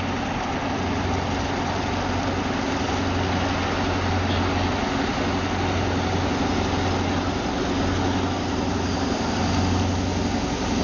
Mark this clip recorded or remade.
recorded